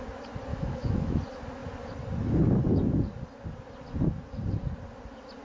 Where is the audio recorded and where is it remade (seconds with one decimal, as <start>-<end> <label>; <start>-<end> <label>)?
0.0-0.5 recorded; 0.5-1.2 remade; 1.2-5.4 recorded